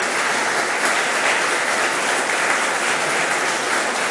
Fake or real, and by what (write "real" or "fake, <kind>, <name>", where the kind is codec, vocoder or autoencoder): real